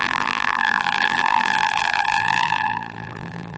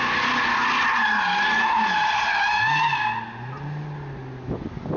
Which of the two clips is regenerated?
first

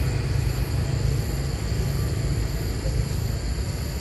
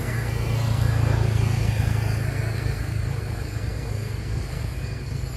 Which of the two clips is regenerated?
second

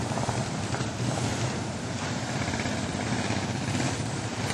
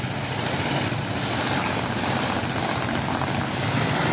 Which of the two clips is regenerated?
first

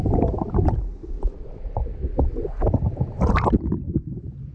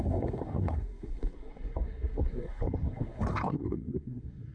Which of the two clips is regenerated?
second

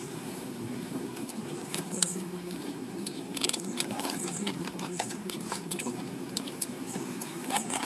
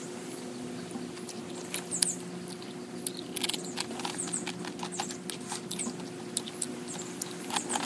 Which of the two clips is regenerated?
first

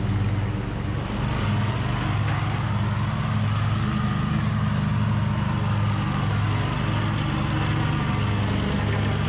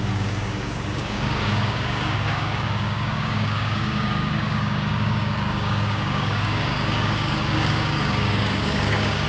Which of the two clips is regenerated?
second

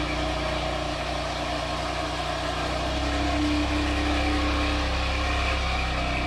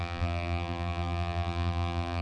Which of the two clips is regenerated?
second